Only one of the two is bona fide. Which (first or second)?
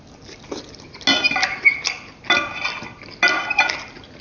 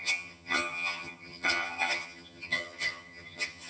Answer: first